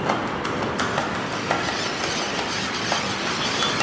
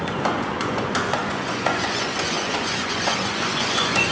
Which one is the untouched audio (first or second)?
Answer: first